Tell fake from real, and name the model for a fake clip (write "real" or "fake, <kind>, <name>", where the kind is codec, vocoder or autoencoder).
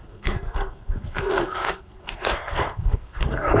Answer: fake, codec, SNAC